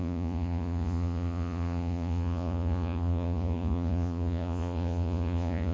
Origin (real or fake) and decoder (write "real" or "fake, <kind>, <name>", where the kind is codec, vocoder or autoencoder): fake, vocoder, Vocos